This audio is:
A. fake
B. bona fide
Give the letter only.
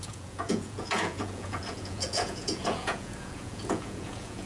A